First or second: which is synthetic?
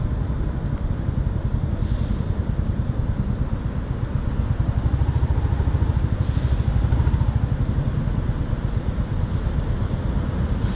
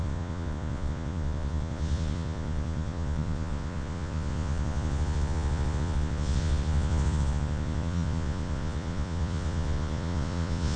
second